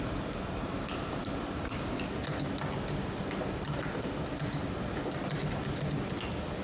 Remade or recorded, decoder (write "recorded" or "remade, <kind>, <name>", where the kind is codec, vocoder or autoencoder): recorded